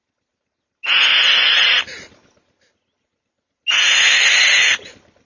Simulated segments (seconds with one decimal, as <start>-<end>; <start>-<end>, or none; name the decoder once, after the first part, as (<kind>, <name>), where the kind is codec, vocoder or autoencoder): none